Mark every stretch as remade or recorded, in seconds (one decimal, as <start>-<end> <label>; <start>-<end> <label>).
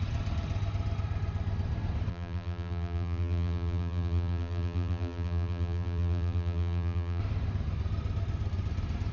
0.0-2.1 recorded; 2.1-7.2 remade; 7.2-9.1 recorded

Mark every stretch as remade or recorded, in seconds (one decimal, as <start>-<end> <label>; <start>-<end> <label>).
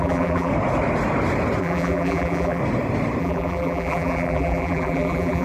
0.0-0.5 remade; 0.5-1.6 recorded; 1.6-2.6 remade; 2.6-3.2 recorded; 3.2-5.4 remade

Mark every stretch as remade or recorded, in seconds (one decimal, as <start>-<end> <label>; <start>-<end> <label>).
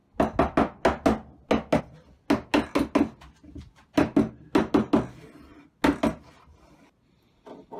0.0-7.8 recorded